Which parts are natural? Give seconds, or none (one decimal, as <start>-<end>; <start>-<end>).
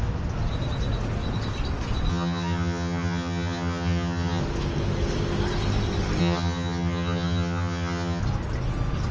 0.0-2.1; 4.4-6.2; 8.2-9.1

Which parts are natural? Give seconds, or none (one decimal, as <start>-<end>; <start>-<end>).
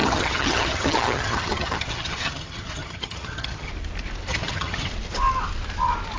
3.7-4.3; 4.9-6.2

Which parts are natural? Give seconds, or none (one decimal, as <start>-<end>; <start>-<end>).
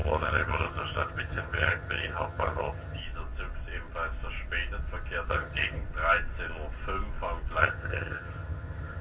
3.0-5.3; 5.8-7.6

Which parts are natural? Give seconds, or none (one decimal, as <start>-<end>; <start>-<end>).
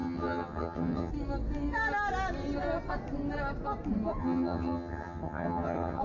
1.1-4.2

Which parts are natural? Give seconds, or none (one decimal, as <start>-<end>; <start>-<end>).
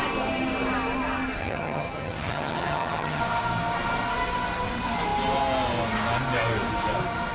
0.0-1.4; 3.2-7.3